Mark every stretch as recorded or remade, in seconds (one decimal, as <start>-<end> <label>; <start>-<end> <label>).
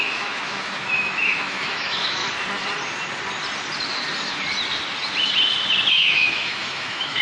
0.0-2.2 remade; 2.2-5.9 recorded; 5.9-7.2 remade